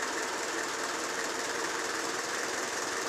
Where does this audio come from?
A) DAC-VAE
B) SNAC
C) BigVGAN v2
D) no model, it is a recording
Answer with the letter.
C